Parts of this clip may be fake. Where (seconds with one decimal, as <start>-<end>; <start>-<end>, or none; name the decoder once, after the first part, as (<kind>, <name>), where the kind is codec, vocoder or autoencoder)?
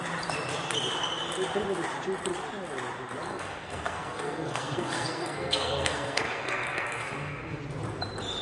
3.3-7.6 (codec, SNAC)